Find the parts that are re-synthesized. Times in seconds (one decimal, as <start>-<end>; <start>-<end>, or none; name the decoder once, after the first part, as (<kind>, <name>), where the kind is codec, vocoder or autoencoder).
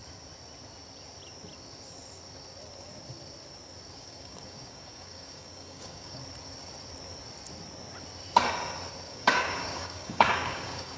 3.9-6.2 (codec, DAC); 9.1-11.0